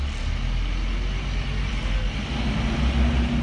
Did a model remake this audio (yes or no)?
no